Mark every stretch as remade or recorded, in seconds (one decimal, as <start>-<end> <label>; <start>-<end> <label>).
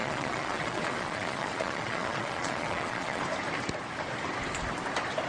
0.0-3.2 remade; 3.2-5.3 recorded